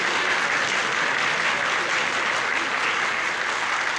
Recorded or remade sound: recorded